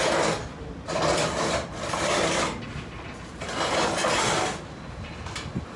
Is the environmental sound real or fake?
real